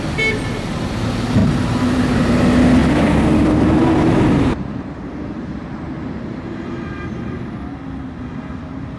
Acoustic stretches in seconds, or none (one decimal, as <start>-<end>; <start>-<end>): 0.0-1.4; 2.1-2.8; 7.5-9.0